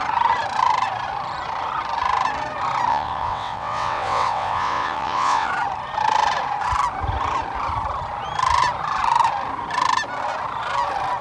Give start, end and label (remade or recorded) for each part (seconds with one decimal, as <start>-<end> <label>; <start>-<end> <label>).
0.0-2.9 recorded; 2.9-5.5 remade; 5.5-11.2 recorded